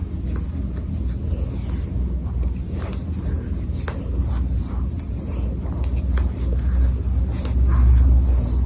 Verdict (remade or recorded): recorded